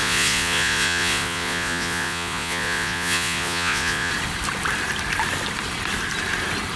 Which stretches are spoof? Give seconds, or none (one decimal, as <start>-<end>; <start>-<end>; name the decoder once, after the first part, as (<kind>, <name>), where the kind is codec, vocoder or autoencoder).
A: 0.0-4.1 (vocoder, Vocos)

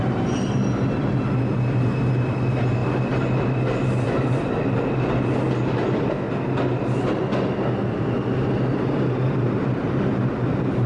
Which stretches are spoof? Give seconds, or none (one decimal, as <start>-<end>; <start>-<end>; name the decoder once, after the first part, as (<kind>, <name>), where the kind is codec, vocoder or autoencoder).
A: none

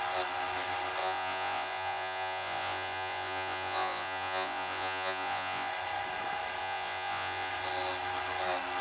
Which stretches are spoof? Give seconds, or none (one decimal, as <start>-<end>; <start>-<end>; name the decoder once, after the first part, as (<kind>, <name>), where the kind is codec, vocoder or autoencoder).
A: 1.0-5.7 (vocoder, Vocos); 6.6-7.5

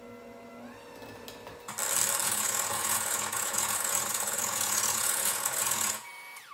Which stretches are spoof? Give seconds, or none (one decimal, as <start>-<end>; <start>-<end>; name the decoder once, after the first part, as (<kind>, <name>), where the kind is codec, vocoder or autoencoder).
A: 2.2-6.1 (vocoder, Vocos)

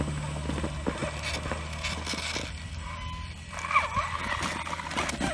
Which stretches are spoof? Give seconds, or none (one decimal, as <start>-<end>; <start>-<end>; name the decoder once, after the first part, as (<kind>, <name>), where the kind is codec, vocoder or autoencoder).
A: none